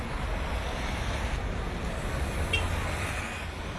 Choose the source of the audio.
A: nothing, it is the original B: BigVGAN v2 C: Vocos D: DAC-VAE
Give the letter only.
A